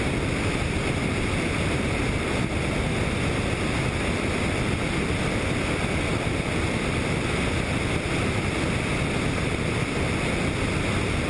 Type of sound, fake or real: real